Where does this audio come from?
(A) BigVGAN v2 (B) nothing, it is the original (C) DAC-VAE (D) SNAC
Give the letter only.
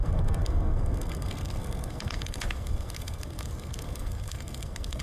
D